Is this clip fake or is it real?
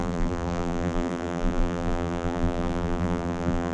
fake